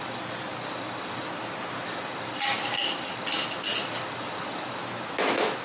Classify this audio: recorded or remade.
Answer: recorded